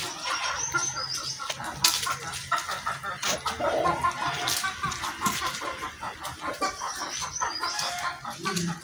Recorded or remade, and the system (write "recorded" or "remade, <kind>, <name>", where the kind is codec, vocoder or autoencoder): recorded